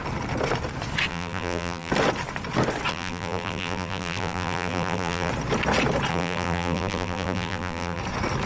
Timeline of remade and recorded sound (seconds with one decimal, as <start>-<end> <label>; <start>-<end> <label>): 0.0-1.1 recorded; 1.1-1.9 remade; 1.9-2.9 recorded; 2.9-5.3 remade; 5.3-6.1 recorded; 6.1-8.0 remade; 8.0-8.5 recorded